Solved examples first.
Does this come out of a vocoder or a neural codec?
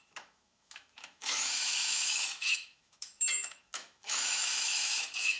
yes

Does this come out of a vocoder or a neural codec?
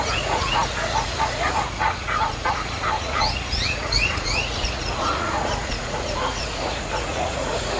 yes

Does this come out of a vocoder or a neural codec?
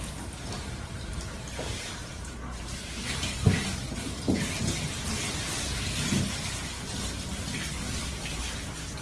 yes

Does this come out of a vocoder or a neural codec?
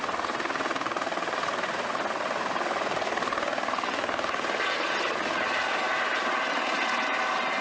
no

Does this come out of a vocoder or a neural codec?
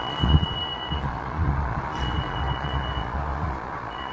yes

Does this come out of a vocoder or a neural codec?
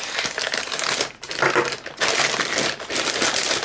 no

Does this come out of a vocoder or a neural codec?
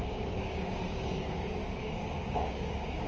yes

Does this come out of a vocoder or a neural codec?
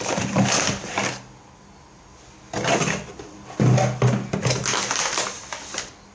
no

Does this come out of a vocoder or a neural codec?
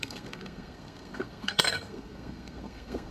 yes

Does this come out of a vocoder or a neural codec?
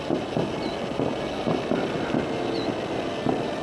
no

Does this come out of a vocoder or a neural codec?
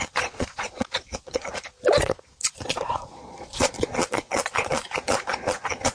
yes